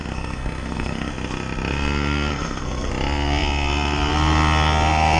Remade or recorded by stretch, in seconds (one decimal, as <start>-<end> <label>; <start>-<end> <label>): 0.0-1.1 remade; 1.1-2.3 recorded; 2.3-2.9 remade; 2.9-5.2 recorded